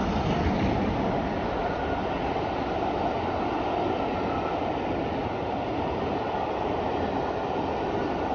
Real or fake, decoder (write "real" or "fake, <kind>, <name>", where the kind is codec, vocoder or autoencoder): real